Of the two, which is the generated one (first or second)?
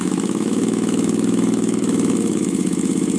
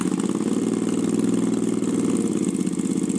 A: first